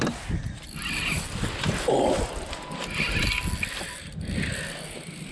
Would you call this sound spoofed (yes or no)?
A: no